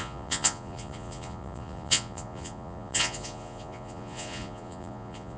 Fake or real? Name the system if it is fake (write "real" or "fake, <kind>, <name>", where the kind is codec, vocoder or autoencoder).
fake, vocoder, Vocos